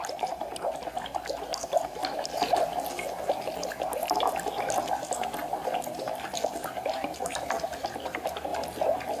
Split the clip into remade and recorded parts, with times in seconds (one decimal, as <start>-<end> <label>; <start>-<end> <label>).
0.0-1.5 recorded; 1.5-2.6 remade; 2.6-9.2 recorded